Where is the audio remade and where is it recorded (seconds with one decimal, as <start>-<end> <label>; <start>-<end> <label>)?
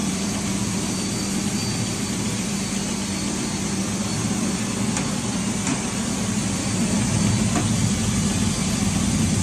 0.0-1.1 remade; 1.1-1.6 recorded; 1.6-2.5 remade; 2.5-3.2 recorded; 3.2-8.1 remade; 8.1-8.6 recorded; 8.6-9.4 remade